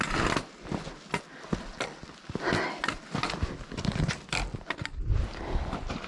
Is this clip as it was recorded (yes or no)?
yes